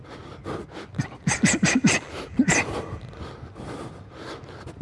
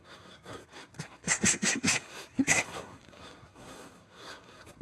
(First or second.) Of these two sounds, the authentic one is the first